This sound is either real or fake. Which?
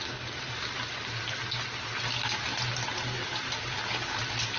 real